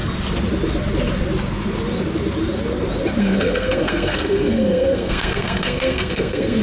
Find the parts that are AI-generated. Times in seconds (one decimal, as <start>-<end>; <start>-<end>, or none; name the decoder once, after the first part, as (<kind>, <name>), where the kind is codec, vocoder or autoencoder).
3.2-6.6 (codec, SNAC)